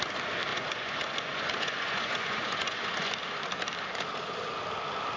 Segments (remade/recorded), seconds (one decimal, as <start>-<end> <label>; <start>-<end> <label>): 0.0-0.5 recorded; 0.5-3.1 remade; 3.1-5.2 recorded

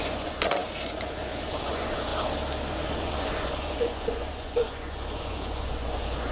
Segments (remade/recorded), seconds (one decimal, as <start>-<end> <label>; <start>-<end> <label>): 0.0-2.1 remade; 2.1-2.7 recorded; 2.7-6.3 remade

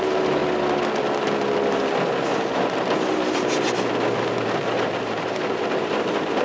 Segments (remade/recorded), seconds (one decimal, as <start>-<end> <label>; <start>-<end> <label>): 0.0-0.4 remade; 0.4-4.2 recorded; 4.2-6.4 remade

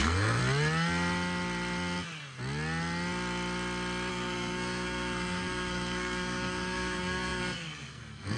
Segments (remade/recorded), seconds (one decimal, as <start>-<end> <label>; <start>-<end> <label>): 0.0-0.4 remade; 0.4-4.1 recorded; 4.1-8.4 remade

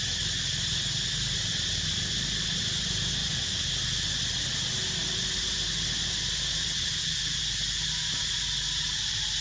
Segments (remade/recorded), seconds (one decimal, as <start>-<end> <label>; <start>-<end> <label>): 0.0-3.2 recorded; 3.2-3.7 remade; 3.7-9.4 recorded

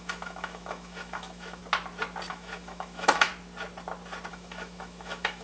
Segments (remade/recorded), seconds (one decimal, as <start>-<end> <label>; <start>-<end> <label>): 0.0-1.6 remade; 1.6-2.3 recorded; 2.3-3.3 remade; 3.3-4.3 recorded; 4.3-5.4 remade